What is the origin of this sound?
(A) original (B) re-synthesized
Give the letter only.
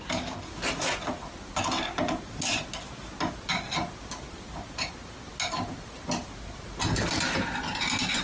A